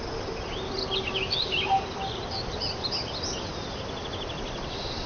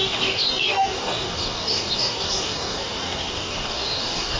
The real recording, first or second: first